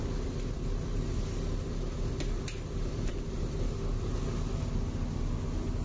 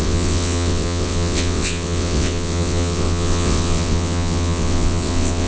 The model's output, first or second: second